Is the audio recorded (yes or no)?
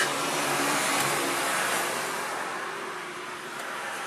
no